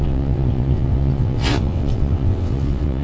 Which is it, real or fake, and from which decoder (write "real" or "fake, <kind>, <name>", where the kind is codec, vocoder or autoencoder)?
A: fake, vocoder, WaveNeXt